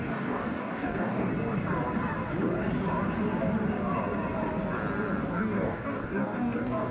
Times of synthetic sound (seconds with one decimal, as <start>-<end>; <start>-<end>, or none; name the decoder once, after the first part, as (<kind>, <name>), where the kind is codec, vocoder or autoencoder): 0.0-1.3 (codec, DAC); 5.4-6.9